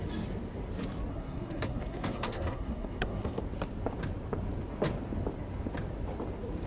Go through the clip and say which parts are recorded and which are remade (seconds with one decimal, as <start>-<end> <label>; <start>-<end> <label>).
0.0-1.1 recorded; 1.1-3.4 remade; 3.4-6.7 recorded